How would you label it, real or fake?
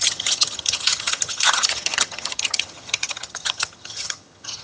fake